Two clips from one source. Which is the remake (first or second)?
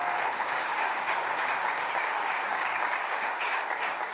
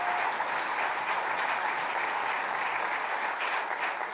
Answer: first